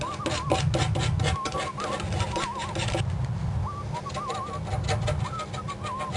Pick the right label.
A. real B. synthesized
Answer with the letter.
A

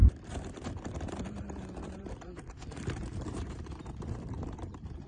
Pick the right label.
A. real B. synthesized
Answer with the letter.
B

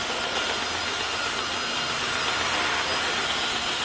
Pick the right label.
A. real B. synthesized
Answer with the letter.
A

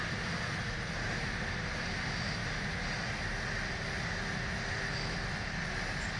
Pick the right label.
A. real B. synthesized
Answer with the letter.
A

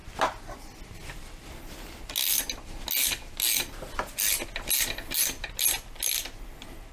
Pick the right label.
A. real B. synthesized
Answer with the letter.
A